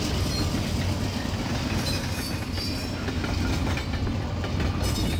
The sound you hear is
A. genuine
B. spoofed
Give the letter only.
A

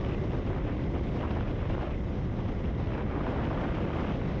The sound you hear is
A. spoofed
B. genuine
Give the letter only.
B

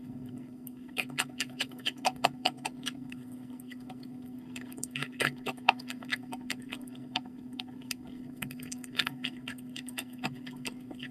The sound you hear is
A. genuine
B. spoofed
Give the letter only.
B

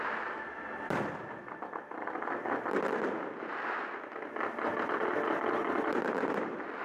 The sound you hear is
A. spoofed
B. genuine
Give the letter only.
A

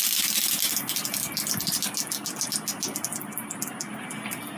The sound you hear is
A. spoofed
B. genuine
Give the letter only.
B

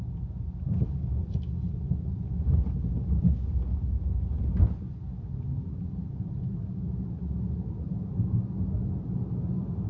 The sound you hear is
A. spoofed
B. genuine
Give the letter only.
B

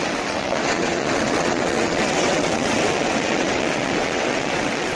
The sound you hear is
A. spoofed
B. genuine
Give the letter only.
A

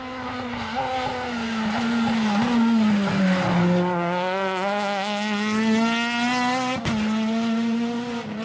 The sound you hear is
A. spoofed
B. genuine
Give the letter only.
B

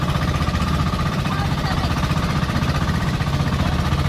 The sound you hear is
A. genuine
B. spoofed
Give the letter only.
B